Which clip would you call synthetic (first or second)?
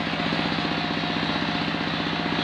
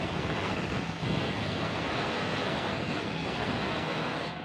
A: second